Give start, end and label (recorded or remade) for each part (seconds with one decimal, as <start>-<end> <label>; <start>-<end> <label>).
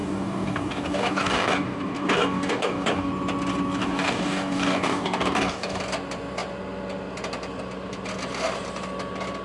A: 0.0-3.1 remade; 3.1-3.8 recorded; 3.8-5.8 remade; 5.8-9.4 recorded